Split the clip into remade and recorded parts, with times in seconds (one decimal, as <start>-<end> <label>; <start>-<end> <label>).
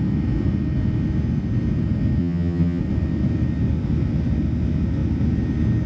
0.0-2.2 recorded; 2.2-2.8 remade; 2.8-5.9 recorded